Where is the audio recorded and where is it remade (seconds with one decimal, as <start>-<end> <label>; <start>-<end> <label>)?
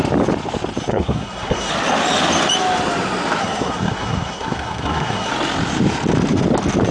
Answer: 0.0-0.9 recorded; 0.9-1.7 remade; 1.7-3.4 recorded; 3.4-5.3 remade; 5.3-6.9 recorded